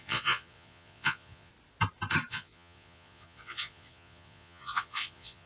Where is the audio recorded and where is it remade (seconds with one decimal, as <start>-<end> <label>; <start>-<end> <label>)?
0.0-1.5 remade; 1.5-2.3 recorded; 2.3-5.5 remade